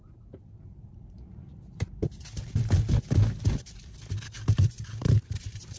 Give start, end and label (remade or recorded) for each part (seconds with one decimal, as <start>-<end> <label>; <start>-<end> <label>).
0.0-2.0 remade; 2.0-4.5 recorded; 4.5-5.8 remade